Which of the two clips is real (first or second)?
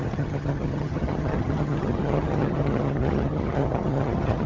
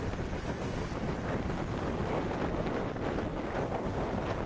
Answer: second